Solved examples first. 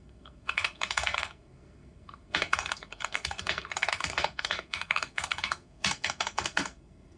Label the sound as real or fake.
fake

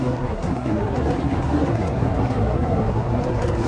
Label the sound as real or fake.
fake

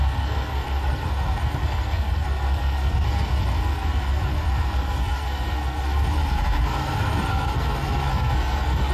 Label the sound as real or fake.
fake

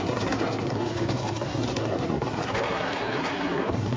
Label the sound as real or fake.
fake